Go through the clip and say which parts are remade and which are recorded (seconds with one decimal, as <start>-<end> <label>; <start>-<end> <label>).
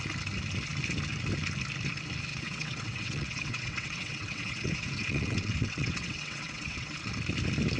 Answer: 0.0-2.3 recorded; 2.3-7.0 remade; 7.0-7.8 recorded